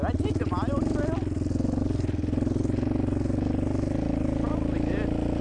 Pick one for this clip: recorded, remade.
recorded